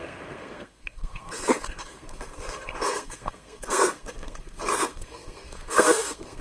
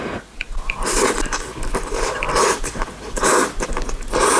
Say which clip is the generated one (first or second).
first